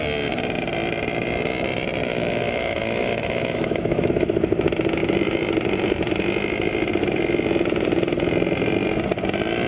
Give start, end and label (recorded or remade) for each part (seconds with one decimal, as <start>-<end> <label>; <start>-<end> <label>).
0.0-2.1 recorded; 2.1-4.1 remade; 4.1-9.7 recorded